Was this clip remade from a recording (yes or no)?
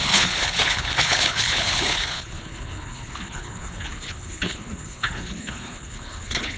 yes